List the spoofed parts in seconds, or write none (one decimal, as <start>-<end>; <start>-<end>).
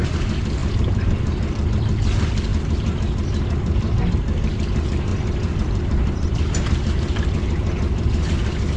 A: 0.6-1.6; 5.1-8.8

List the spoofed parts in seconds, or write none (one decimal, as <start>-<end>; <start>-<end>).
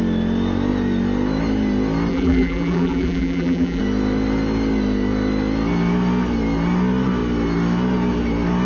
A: 2.1-3.8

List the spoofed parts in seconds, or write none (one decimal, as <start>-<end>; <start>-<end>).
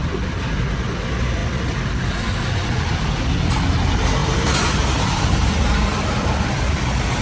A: 4.2-6.5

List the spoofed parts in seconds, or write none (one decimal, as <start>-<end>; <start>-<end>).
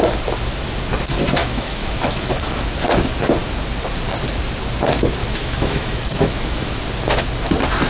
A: 1.4-2.7; 5.2-6.8